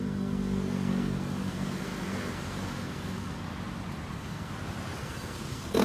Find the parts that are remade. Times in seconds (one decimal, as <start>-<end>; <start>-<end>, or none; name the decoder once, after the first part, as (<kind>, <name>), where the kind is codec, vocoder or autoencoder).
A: 0.0-3.5 (codec, SNAC); 4.1-4.5; 5.0-5.8